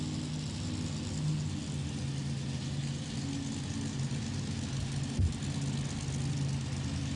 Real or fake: real